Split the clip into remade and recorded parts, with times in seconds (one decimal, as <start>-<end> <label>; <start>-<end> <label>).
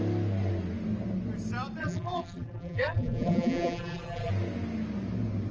0.0-1.8 recorded; 1.8-4.3 remade; 4.3-5.5 recorded